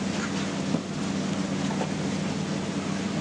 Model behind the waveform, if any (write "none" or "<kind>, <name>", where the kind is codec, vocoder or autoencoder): none